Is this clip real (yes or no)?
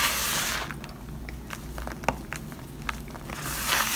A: yes